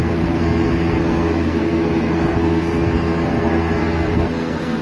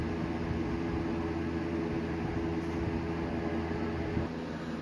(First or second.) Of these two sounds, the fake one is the first